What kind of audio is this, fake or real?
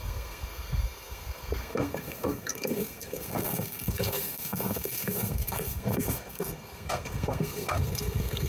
fake